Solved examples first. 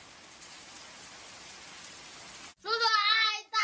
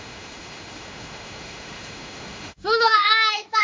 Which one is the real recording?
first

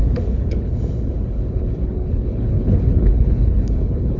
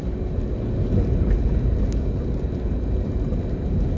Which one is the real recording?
second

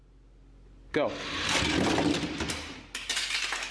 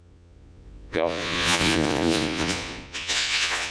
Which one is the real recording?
first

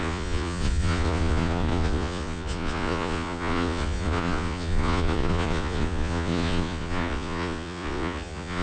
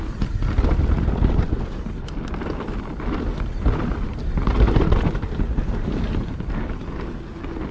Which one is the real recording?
second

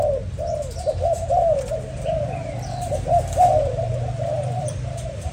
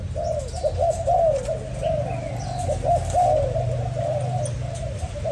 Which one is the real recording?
second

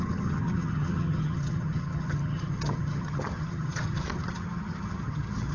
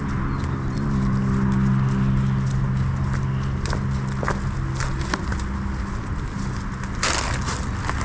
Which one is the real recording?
second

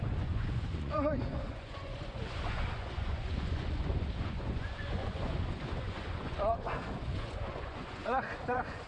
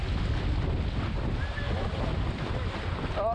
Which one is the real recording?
second